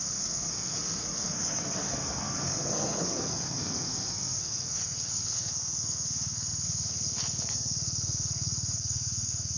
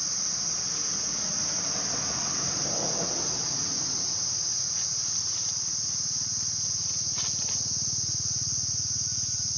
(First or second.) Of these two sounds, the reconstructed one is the first